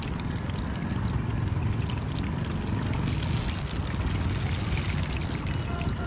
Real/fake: real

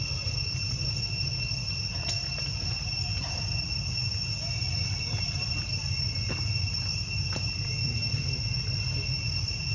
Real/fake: real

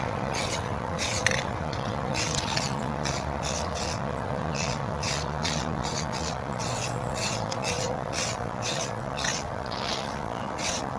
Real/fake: fake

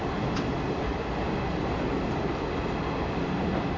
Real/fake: real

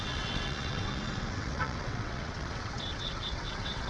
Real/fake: fake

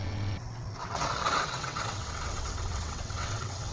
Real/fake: fake